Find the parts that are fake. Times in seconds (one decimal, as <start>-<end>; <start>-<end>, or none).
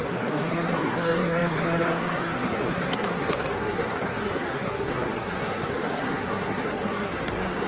0.0-7.7